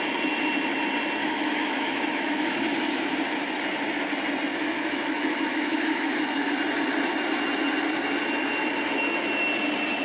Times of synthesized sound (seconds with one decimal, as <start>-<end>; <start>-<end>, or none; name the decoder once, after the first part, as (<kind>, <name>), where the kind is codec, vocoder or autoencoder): 1.2-3.0 (autoencoder, DAC-VAE); 4.5-6.5